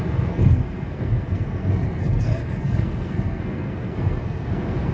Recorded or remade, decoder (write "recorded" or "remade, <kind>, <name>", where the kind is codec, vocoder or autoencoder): remade, codec, SNAC